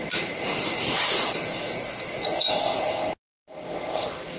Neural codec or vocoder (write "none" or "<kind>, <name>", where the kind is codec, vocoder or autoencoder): none